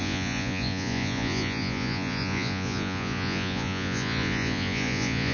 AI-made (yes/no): yes